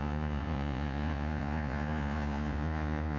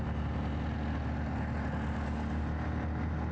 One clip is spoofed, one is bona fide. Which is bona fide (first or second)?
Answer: second